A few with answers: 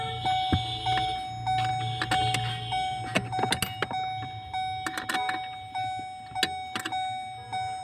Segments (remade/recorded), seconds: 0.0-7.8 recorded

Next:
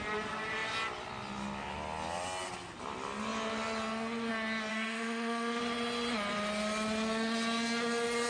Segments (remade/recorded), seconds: 0.0-4.7 recorded; 4.7-5.6 remade; 5.6-8.3 recorded

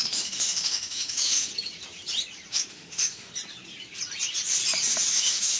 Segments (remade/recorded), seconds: 0.0-1.5 remade; 1.5-2.5 recorded; 2.5-3.3 remade; 3.3-5.1 recorded; 5.1-5.6 remade

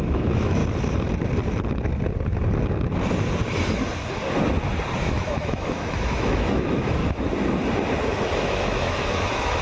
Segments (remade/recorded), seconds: 0.0-0.6 remade; 0.6-5.0 recorded; 5.0-7.0 remade; 7.0-8.3 recorded; 8.3-9.6 remade

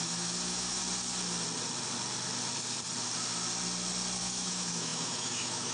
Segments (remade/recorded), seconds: 0.0-0.8 remade; 0.8-4.2 recorded; 4.2-5.7 remade

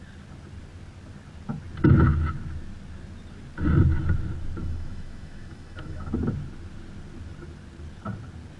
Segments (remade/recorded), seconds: 0.0-4.6 recorded; 4.6-6.1 remade; 6.1-8.6 recorded